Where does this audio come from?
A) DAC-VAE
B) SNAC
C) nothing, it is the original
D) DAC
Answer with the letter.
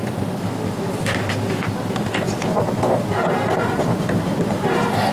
C